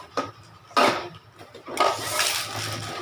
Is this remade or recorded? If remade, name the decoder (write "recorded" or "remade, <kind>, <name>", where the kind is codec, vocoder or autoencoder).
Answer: recorded